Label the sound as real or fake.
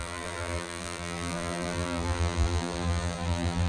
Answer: fake